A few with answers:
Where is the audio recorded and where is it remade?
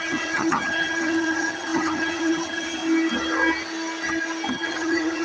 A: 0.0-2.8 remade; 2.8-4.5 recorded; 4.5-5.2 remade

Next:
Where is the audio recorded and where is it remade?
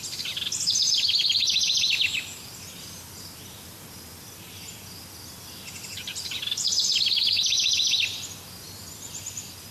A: 0.0-9.7 recorded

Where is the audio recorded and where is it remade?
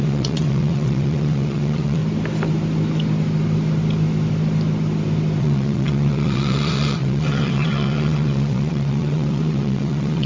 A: 0.0-2.0 remade; 2.0-5.4 recorded; 5.4-10.3 remade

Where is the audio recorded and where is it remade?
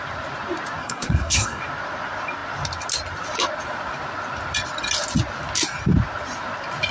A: 0.0-0.8 recorded; 0.8-1.6 remade; 1.6-6.9 recorded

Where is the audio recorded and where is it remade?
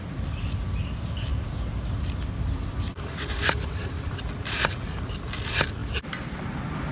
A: 0.0-1.3 recorded; 1.3-4.2 remade; 4.2-6.9 recorded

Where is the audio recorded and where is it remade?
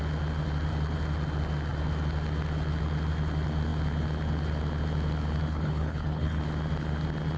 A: 0.0-5.5 recorded; 5.5-6.4 remade; 6.4-7.4 recorded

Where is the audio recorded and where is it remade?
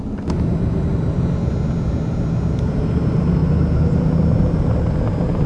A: 0.0-5.5 recorded